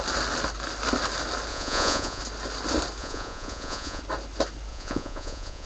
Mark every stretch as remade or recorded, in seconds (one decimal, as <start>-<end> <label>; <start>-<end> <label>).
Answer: 0.0-1.5 recorded; 1.5-2.2 remade; 2.2-3.0 recorded; 3.0-4.0 remade; 4.0-4.7 recorded; 4.7-5.7 remade